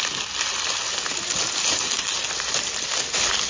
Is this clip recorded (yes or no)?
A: yes